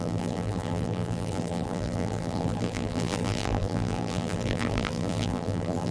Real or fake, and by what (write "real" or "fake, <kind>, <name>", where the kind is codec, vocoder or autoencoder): fake, vocoder, BigVGAN v2